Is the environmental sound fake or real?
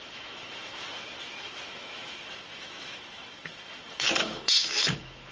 fake